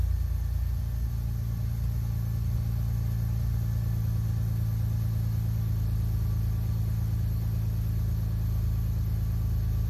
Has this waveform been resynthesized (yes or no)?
no